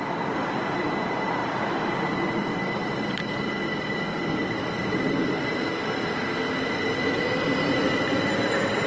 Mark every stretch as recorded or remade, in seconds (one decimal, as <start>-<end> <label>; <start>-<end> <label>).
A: 0.0-1.4 recorded; 1.4-4.0 remade; 4.0-4.4 recorded; 4.4-5.4 remade; 5.4-8.9 recorded